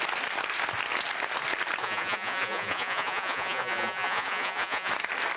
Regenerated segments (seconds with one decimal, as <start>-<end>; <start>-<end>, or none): 1.8-4.9